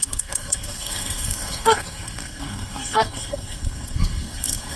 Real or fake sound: fake